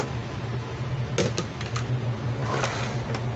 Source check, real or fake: real